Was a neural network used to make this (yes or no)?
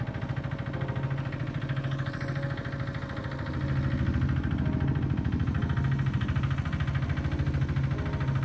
no